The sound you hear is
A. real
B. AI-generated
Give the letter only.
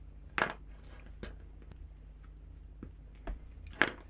A